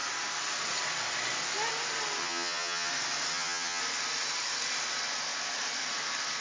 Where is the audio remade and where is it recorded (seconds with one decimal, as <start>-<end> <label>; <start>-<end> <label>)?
0.0-2.2 recorded; 2.2-2.9 remade; 2.9-3.3 recorded; 3.3-3.8 remade; 3.8-6.4 recorded